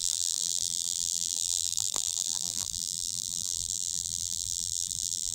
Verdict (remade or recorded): remade